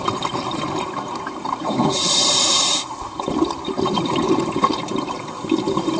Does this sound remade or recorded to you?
remade